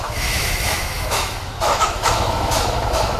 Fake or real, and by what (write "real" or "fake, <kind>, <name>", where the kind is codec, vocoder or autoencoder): fake, autoencoder, DAC-VAE